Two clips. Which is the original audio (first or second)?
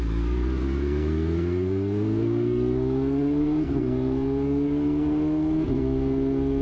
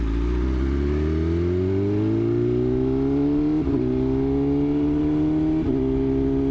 second